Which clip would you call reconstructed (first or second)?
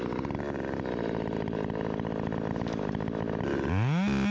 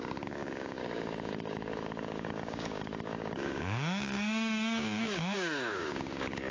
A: second